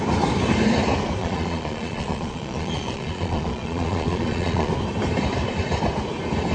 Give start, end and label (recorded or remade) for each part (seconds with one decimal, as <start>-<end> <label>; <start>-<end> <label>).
0.0-1.2 recorded; 1.2-4.7 remade; 4.7-6.5 recorded